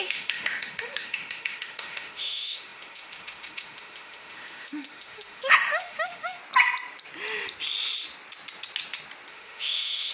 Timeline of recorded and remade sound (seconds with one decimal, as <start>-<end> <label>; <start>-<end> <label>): 0.0-6.4 remade; 6.4-9.3 recorded; 9.3-10.1 remade